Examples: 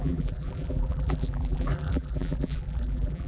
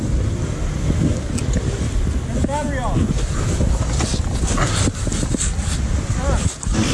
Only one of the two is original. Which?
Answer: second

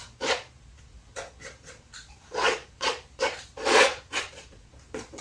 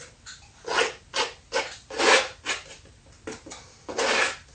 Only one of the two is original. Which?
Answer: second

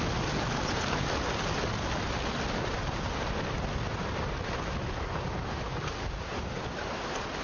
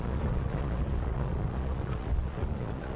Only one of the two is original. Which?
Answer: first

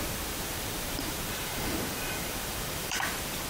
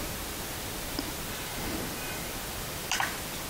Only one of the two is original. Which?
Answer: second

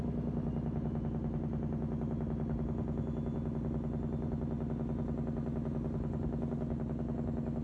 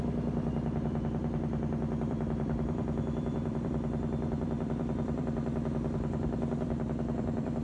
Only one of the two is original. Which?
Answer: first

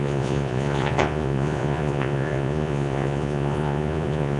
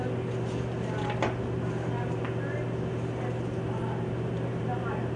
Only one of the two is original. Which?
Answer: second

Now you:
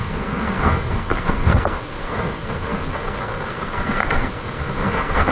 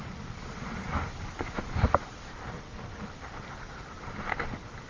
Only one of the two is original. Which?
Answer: second